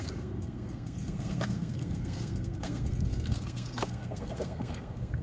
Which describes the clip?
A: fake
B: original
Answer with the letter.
A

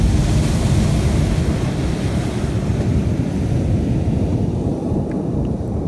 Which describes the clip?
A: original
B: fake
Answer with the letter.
A